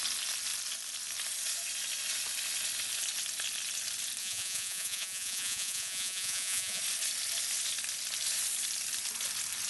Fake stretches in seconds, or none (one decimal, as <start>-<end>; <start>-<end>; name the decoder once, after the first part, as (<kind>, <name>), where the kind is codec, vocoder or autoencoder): 4.2-6.8 (vocoder, Vocos)